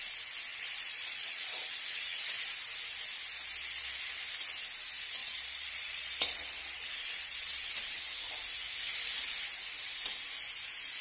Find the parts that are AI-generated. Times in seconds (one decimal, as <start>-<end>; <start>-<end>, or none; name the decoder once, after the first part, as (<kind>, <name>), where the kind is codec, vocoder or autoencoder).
0.5-2.3 (vocoder, Vocos); 5.2-8.0